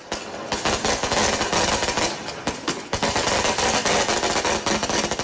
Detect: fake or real real